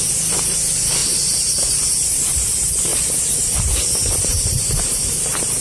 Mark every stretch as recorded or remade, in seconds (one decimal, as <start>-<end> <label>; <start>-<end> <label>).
0.0-1.0 recorded; 1.0-2.2 remade; 2.2-2.9 recorded; 2.9-5.6 remade